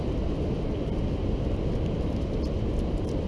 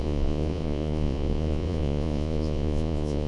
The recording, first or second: first